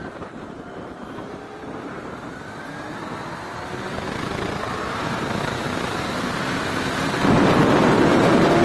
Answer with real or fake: fake